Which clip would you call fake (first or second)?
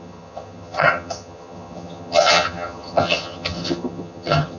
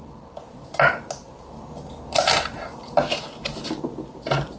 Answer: first